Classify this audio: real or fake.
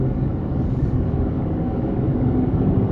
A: fake